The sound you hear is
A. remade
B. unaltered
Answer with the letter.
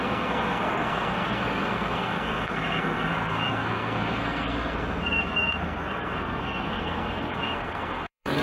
A